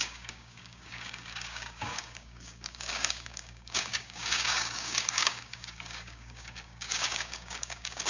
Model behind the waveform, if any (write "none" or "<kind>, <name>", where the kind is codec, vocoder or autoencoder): codec, DAC